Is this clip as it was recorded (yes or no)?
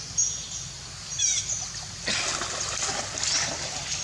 yes